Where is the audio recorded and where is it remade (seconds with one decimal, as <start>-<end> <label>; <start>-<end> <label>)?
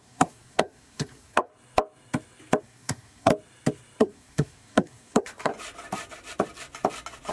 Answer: 0.0-1.5 remade; 1.5-2.6 recorded; 2.6-3.3 remade; 3.3-4.0 recorded; 4.0-5.5 remade; 5.5-7.3 recorded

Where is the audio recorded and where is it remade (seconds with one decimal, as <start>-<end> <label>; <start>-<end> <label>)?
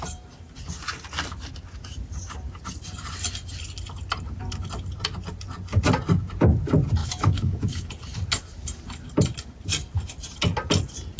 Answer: 0.0-7.0 recorded; 7.0-7.9 remade; 7.9-11.2 recorded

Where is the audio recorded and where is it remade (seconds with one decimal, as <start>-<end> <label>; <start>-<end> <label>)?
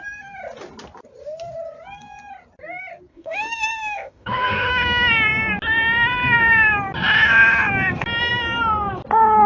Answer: 0.0-3.1 recorded; 3.1-4.7 remade; 4.7-9.5 recorded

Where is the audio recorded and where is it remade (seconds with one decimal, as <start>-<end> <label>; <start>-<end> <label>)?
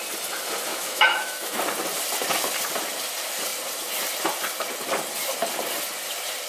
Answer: 0.0-0.7 recorded; 0.7-1.6 remade; 1.6-6.5 recorded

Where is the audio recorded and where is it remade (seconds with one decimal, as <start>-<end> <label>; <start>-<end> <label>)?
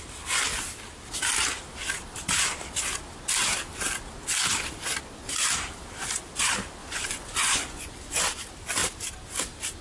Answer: 0.0-6.8 recorded; 6.8-8.2 remade; 8.2-9.8 recorded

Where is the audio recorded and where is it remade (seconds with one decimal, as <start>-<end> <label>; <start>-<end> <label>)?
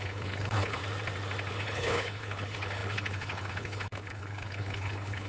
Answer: 0.0-0.8 remade; 0.8-1.5 recorded; 1.5-5.3 remade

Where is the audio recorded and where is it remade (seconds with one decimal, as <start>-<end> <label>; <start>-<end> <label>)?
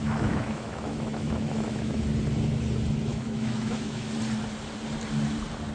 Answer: 0.0-2.0 remade; 2.0-3.1 recorded; 3.1-4.1 remade; 4.1-5.7 recorded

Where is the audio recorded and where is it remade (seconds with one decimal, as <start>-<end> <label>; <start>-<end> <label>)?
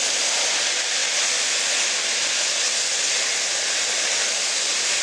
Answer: 0.0-5.0 recorded